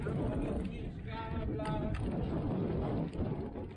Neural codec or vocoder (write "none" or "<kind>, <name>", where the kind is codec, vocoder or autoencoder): none